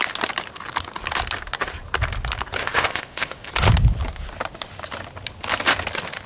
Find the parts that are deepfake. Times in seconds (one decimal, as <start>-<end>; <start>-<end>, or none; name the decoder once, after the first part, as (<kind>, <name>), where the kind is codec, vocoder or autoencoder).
2.6-3.5 (codec, ZipCodec)